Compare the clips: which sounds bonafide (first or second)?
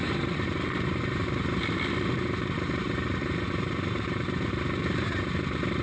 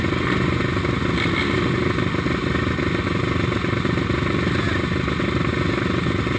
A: second